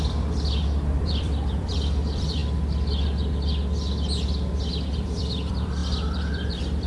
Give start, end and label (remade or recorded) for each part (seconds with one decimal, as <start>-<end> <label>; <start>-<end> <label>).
0.0-2.4 remade; 2.4-4.9 recorded; 4.9-6.9 remade